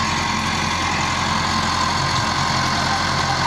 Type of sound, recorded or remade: recorded